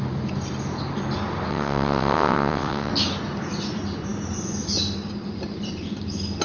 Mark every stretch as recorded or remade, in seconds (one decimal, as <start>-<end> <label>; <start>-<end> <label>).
0.0-1.5 recorded; 1.5-2.9 remade; 2.9-6.4 recorded